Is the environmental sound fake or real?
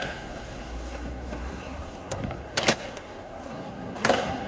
fake